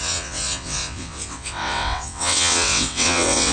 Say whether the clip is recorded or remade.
remade